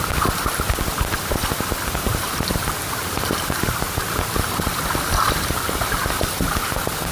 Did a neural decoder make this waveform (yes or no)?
yes